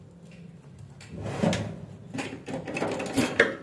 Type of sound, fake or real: real